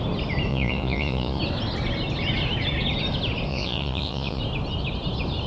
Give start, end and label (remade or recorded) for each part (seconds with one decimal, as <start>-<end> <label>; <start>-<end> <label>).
0.0-0.5 recorded; 0.5-1.4 remade; 1.4-3.5 recorded; 3.5-4.4 remade; 4.4-5.5 recorded